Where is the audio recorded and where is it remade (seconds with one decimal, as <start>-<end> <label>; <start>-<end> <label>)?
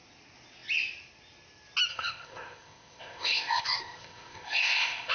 0.0-1.9 recorded; 1.9-5.1 remade